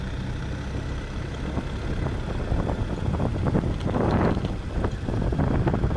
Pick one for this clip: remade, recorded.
recorded